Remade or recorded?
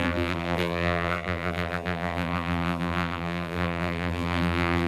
remade